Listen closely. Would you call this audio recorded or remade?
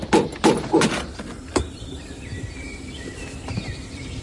remade